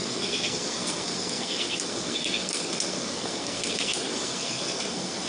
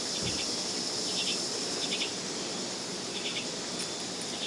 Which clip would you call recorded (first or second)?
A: second